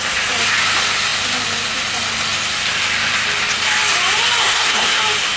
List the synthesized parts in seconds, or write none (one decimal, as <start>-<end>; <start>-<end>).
4.4-5.0